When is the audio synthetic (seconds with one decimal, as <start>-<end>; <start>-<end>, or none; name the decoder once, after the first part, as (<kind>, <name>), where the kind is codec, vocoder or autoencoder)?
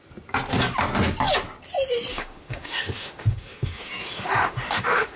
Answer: 2.1-5.2 (autoencoder, DAC-VAE)